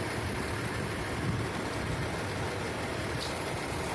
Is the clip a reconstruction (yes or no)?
yes